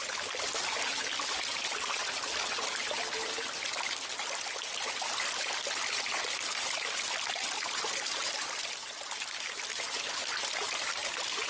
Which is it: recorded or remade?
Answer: recorded